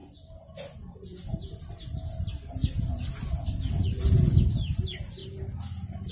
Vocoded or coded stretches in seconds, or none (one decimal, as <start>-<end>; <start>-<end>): none

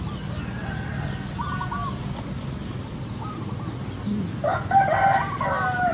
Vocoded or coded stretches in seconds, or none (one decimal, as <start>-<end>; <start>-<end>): none